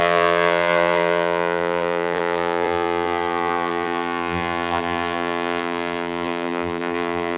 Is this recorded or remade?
remade